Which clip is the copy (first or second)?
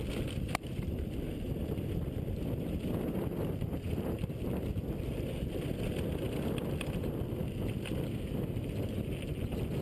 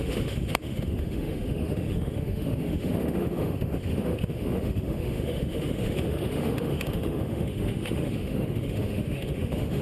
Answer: second